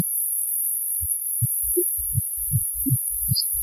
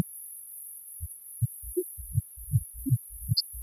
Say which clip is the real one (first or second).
second